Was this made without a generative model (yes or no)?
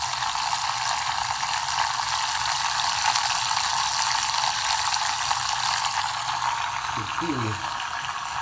yes